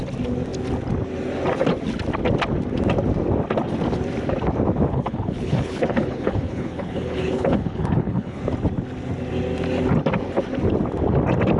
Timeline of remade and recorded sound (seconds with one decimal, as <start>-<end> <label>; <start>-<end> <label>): 0.0-4.9 recorded; 4.9-8.4 remade; 8.4-11.6 recorded